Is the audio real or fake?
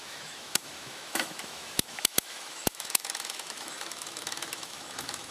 fake